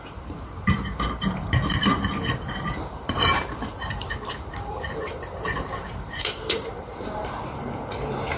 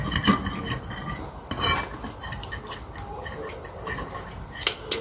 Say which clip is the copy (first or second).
first